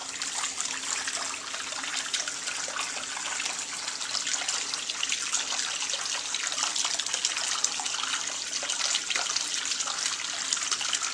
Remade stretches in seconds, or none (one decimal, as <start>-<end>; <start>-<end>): none